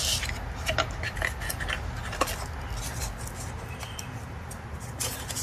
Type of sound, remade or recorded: recorded